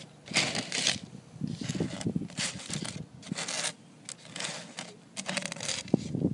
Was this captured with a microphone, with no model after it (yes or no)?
yes